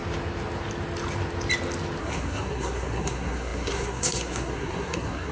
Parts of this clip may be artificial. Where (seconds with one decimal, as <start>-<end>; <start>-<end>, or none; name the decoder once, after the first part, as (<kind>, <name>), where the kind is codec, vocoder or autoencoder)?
2.0-5.3 (codec, SNAC)